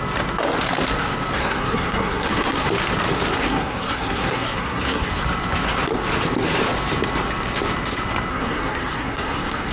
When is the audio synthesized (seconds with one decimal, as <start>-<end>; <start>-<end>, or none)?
1.4-2.7; 3.4-5.1; 8.3-9.7